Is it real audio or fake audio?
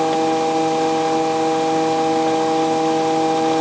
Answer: real